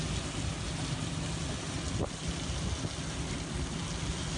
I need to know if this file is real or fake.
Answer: real